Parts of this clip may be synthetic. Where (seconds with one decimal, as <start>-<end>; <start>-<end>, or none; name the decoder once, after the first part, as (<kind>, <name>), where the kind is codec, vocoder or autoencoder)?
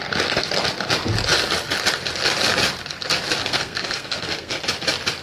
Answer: 3.4-4.6 (codec, SNAC)